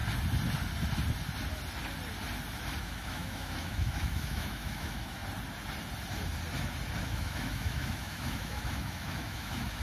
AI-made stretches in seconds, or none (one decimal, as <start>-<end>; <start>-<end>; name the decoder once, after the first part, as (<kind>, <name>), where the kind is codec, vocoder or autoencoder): 2.8-5.2 (autoencoder, DAC-VAE); 7.0-9.8